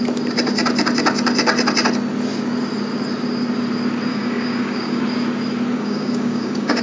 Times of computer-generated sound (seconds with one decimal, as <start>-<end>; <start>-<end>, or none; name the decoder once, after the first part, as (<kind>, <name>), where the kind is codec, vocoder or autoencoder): 4.1-5.0 (codec, DAC); 5.7-6.8